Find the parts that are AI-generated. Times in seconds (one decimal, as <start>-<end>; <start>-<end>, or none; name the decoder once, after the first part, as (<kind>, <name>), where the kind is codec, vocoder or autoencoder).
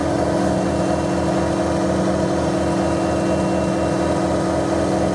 0.0-0.7 (codec, DAC)